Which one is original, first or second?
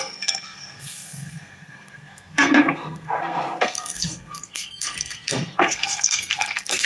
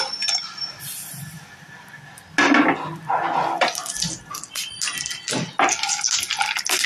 second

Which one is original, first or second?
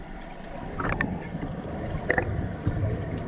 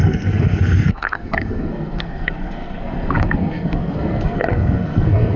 first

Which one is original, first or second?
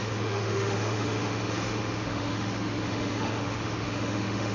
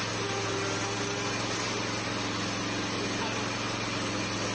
second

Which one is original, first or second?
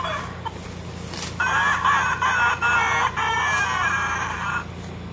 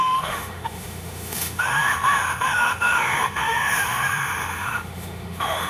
first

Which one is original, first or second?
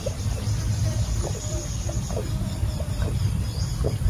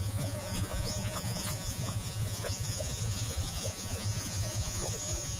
first